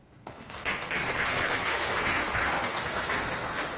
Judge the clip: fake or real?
fake